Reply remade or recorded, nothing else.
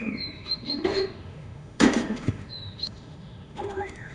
remade